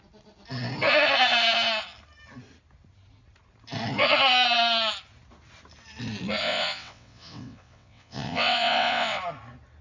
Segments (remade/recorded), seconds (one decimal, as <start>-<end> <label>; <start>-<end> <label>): 0.0-6.4 recorded; 6.4-9.2 remade; 9.2-9.8 recorded

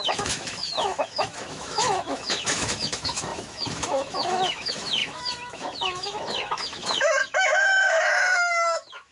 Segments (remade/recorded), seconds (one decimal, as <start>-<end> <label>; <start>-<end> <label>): 0.0-9.1 remade

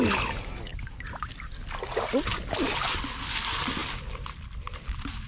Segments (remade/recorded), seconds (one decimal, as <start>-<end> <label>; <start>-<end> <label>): 0.0-0.7 remade; 0.7-2.8 recorded; 2.8-5.3 remade

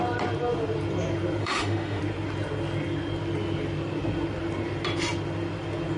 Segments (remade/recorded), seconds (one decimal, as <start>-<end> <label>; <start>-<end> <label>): 0.0-1.4 recorded; 1.4-2.0 remade; 2.0-6.0 recorded

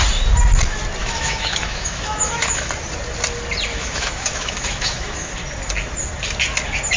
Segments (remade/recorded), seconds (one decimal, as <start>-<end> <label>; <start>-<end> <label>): 0.0-1.0 recorded; 1.0-2.7 remade; 2.7-3.7 recorded; 3.7-5.3 remade; 5.3-7.0 recorded

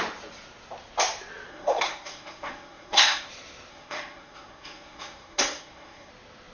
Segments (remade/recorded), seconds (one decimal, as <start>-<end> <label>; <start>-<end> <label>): 0.0-1.5 recorded; 1.5-3.3 remade; 3.3-3.7 recorded; 3.7-6.1 remade; 6.1-6.5 recorded

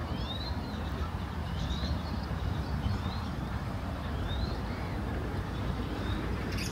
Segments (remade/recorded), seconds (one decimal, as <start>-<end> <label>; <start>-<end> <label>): 0.0-6.7 remade

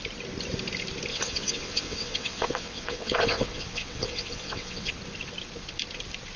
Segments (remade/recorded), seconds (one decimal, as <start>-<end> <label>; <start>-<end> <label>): 0.0-1.1 recorded; 1.1-4.9 remade; 4.9-6.4 recorded